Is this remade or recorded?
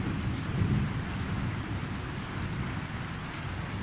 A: recorded